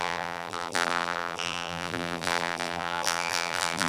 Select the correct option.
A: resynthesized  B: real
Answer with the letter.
A